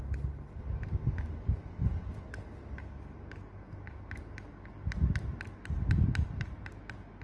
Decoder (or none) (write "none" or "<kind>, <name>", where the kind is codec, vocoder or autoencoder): none